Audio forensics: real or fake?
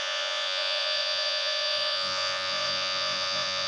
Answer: fake